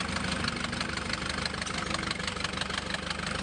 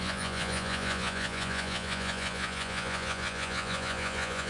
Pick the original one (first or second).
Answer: first